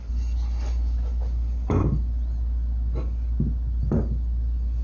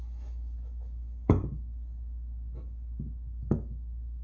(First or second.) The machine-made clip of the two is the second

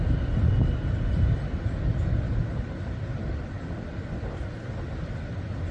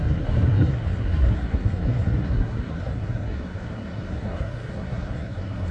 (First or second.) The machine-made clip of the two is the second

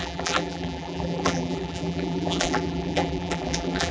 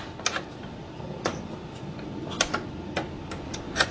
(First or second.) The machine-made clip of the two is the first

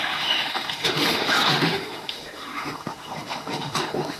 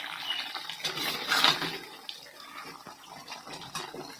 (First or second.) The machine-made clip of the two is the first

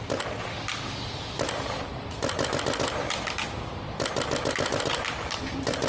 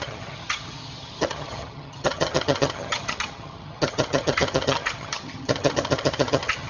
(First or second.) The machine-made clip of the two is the second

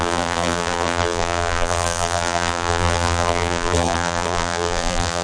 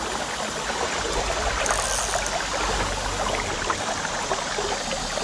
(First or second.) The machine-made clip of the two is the first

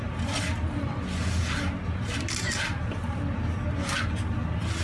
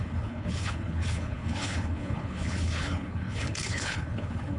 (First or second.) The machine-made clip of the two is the second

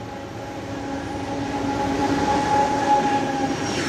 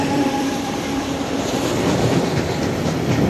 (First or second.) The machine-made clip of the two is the second